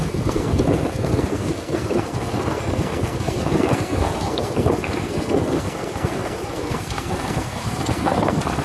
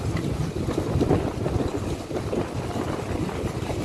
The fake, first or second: first